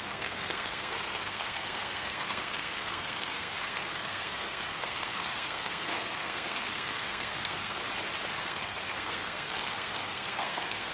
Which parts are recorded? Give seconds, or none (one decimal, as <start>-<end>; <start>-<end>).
7.8-8.4